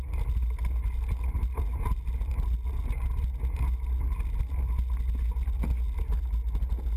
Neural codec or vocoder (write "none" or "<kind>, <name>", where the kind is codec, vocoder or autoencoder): none